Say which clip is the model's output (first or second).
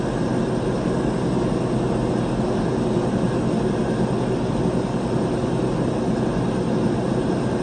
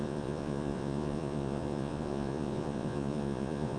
second